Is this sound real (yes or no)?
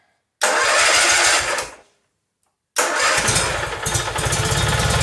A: yes